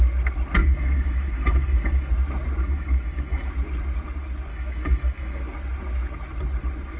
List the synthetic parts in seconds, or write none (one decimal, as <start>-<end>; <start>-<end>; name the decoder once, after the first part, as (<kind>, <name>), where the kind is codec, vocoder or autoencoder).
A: 0.6-2.1 (autoencoder, DAC-VAE); 2.6-3.5; 4.5-5.4